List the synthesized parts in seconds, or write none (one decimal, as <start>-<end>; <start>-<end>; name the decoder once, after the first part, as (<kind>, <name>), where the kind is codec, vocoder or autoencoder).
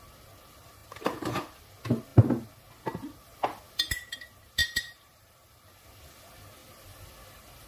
0.8-1.6 (vocoder, BigVGAN v2); 4.6-5.7